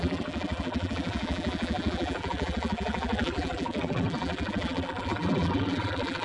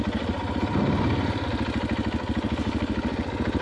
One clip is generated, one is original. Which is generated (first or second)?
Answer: first